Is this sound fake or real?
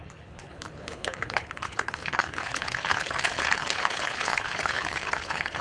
fake